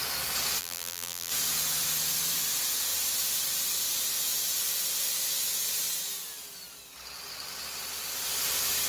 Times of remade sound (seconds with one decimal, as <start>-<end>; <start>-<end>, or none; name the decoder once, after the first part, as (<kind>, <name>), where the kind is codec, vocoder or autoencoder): 0.6-1.3 (vocoder, BigVGAN v2)